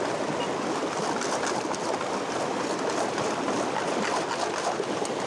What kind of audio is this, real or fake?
real